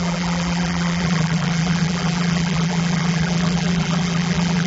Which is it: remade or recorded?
remade